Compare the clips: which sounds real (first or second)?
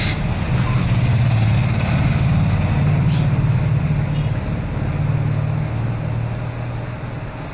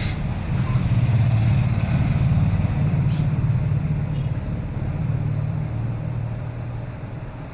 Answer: first